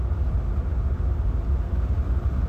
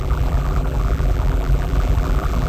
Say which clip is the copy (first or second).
second